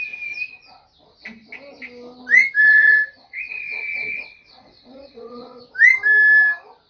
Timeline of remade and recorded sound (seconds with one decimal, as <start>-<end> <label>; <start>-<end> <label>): 0.0-2.6 recorded; 2.6-5.6 remade; 5.6-6.9 recorded